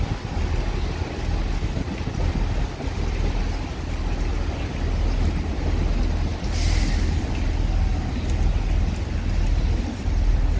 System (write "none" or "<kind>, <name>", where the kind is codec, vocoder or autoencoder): none